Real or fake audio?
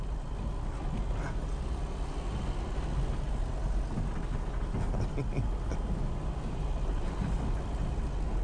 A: real